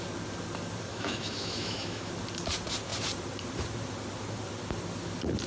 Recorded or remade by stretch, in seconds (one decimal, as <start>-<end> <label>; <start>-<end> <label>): 0.0-0.9 recorded; 0.9-2.1 remade; 2.1-5.5 recorded